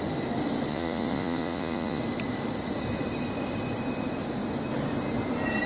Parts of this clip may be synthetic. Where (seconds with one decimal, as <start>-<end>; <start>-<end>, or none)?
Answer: 0.7-2.0